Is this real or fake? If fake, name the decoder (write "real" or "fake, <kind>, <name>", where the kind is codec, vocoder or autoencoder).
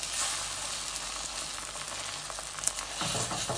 real